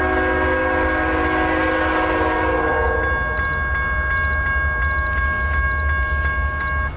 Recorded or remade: recorded